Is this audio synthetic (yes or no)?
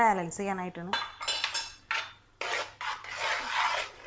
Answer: no